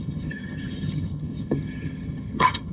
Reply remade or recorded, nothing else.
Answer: remade